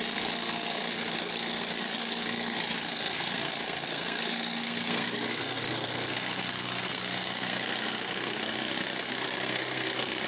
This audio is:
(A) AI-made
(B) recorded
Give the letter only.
A